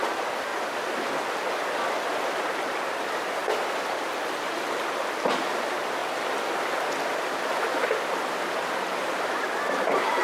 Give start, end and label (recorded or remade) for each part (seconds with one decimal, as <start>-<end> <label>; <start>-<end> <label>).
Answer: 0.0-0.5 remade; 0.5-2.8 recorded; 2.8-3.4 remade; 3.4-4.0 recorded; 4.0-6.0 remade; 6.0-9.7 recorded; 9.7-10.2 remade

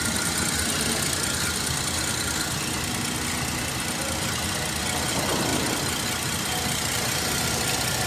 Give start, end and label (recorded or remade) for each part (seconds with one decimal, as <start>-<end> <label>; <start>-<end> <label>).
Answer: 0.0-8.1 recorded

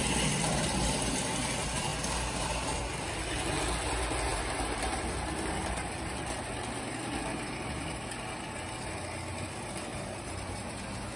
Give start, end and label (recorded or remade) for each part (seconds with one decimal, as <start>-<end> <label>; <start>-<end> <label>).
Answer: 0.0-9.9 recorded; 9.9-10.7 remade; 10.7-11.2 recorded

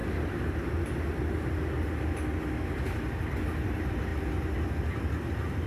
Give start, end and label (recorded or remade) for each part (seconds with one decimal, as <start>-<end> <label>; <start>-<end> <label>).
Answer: 0.0-0.8 remade; 0.8-5.7 recorded

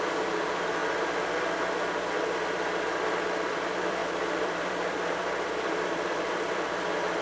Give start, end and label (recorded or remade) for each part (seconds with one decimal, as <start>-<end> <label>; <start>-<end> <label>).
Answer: 0.0-0.8 remade; 0.8-2.4 recorded; 2.4-7.2 remade

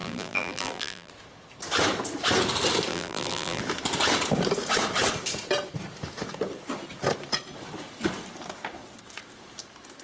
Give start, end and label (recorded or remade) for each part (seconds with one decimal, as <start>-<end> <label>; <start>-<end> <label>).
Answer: 0.0-1.1 remade; 1.1-2.9 recorded; 2.9-3.6 remade; 3.6-10.0 recorded

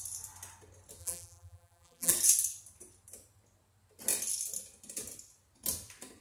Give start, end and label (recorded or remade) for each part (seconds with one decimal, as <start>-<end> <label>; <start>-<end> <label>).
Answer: 0.0-1.0 recorded; 1.0-2.1 remade; 2.1-6.2 recorded

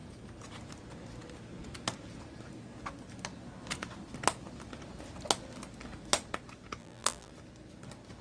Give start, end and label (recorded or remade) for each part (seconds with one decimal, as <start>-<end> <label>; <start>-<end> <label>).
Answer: 0.0-6.8 recorded; 6.8-7.3 remade; 7.3-8.2 recorded